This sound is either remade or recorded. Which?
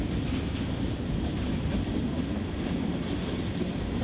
recorded